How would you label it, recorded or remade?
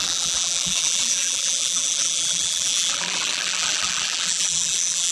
remade